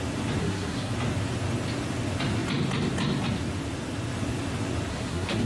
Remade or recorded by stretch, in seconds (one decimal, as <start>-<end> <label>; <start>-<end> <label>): 0.0-0.4 recorded; 0.4-0.9 remade; 0.9-4.9 recorded; 4.9-5.5 remade